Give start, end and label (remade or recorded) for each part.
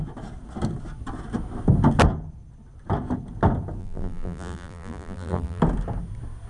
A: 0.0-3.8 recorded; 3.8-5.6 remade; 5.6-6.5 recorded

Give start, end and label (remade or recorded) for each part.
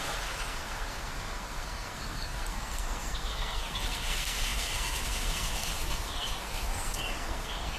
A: 0.0-7.8 remade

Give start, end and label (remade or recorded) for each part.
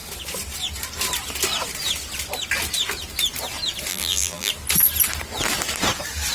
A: 0.0-3.9 recorded; 3.9-4.5 remade; 4.5-6.3 recorded